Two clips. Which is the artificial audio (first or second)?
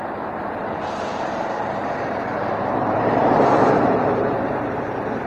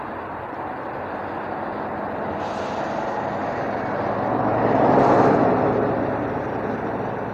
first